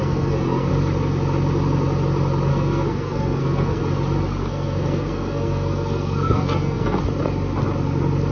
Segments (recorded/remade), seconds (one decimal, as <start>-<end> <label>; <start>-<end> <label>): 0.0-0.7 remade; 0.7-2.5 recorded; 2.5-3.8 remade; 3.8-4.4 recorded; 4.4-7.0 remade; 7.0-8.3 recorded

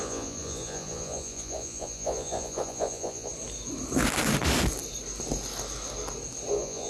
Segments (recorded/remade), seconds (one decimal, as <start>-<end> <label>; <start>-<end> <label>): 0.0-3.3 remade; 3.3-6.5 recorded; 6.5-6.9 remade

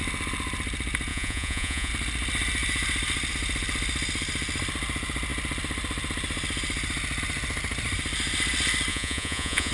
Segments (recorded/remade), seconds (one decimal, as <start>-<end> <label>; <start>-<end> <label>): 0.0-1.1 recorded; 1.1-1.9 remade; 1.9-8.9 recorded; 8.9-9.7 remade

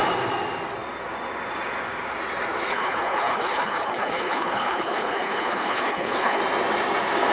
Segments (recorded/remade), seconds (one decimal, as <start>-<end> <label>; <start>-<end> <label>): 0.0-2.7 recorded; 2.7-6.4 remade; 6.4-7.3 recorded

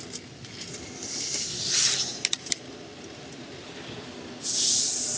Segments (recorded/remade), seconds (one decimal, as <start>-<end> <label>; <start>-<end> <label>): 0.0-5.2 recorded

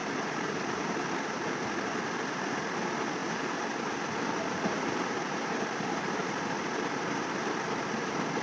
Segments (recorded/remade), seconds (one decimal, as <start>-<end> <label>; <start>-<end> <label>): 0.0-1.1 remade; 1.1-3.2 recorded; 3.2-6.4 remade; 6.4-8.4 recorded

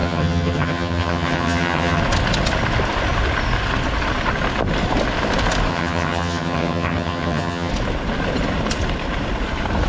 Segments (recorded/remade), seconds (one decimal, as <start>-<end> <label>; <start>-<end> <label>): 0.0-2.0 remade; 2.0-5.7 recorded; 5.7-7.7 remade; 7.7-9.9 recorded

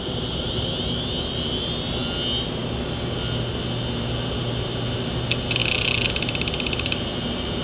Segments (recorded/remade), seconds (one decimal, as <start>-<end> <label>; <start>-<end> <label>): 0.0-7.6 recorded